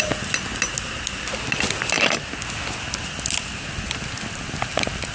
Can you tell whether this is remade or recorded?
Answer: recorded